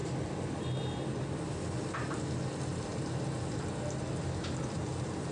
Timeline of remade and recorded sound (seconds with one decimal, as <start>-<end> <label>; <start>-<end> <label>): 0.0-0.6 remade; 0.6-5.3 recorded